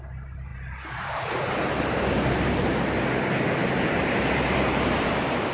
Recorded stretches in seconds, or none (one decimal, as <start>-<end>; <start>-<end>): 0.0-0.5; 1.5-3.6; 5.1-5.5